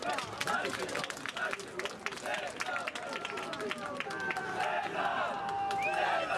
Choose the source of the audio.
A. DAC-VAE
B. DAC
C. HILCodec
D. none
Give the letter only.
D